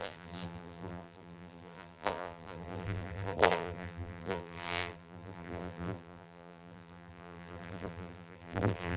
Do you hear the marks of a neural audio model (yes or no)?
yes